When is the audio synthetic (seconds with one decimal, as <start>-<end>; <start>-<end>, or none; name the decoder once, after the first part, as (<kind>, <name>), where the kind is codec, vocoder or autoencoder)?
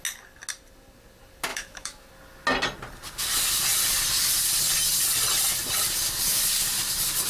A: 1.5-2.1 (autoencoder, DAC-VAE)